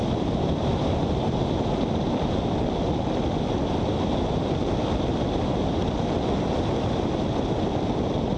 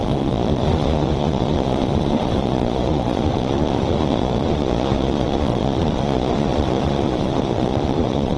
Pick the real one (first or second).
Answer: first